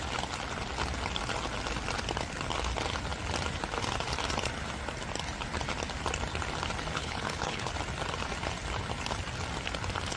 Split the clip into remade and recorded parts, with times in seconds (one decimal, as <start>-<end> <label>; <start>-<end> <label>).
0.0-7.0 recorded; 7.0-7.7 remade; 7.7-10.2 recorded

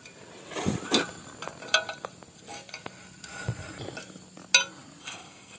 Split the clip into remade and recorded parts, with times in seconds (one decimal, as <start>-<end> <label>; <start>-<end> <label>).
0.0-5.0 recorded; 5.0-5.6 remade

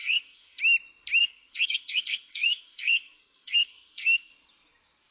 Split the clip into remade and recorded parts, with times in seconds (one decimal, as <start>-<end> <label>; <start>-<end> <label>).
0.0-0.6 remade; 0.6-1.2 recorded; 1.2-4.3 remade; 4.3-5.1 recorded

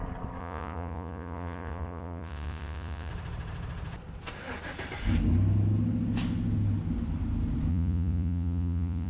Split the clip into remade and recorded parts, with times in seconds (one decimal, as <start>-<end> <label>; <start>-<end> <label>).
0.0-0.4 recorded; 0.4-3.1 remade; 3.1-7.7 recorded; 7.7-9.1 remade

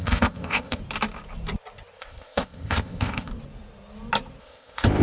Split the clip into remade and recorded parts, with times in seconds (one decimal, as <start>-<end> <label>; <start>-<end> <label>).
0.0-0.8 remade; 0.8-2.0 recorded; 2.0-3.3 remade; 3.3-4.4 recorded; 4.4-5.0 remade